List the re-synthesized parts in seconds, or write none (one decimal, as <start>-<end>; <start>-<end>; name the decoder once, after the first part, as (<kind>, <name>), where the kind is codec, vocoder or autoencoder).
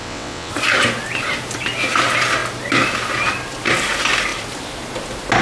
0.0-0.5 (vocoder, WaveNeXt)